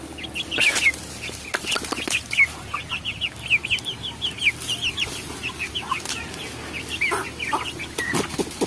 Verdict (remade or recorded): recorded